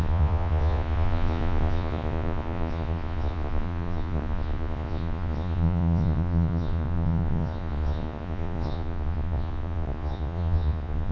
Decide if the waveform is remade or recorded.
remade